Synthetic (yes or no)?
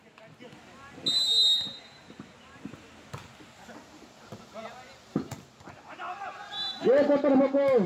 no